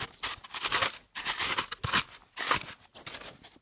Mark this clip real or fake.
real